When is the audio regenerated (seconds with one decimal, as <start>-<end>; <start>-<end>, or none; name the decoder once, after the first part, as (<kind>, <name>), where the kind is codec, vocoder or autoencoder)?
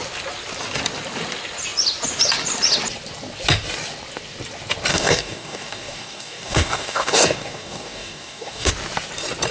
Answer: 4.9-8.7 (codec, DAC)